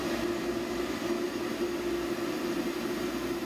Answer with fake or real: real